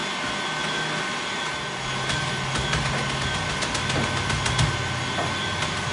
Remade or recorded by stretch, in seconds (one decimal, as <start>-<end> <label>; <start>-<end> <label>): 0.0-5.9 recorded